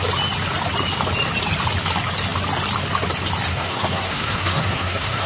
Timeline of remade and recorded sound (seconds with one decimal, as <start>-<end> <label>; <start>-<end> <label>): 0.0-3.5 recorded; 3.5-5.3 remade